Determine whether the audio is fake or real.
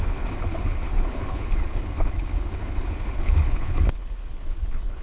fake